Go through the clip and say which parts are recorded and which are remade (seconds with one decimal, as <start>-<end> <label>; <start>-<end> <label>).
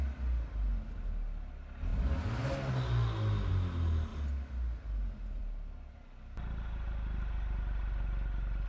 0.0-8.7 recorded